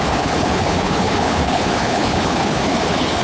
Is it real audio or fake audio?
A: fake